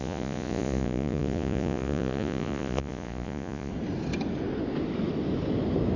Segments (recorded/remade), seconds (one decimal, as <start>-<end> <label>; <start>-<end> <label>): 0.0-3.7 remade; 3.7-6.0 recorded